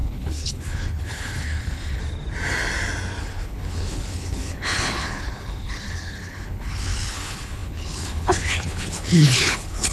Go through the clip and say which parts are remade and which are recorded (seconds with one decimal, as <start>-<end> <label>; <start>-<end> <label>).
0.0-2.0 remade; 2.0-3.2 recorded; 3.2-9.9 remade